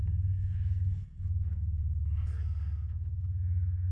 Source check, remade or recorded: remade